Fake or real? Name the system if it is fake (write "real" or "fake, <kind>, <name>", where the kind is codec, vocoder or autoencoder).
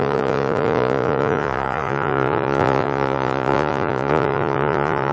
fake, vocoder, Vocos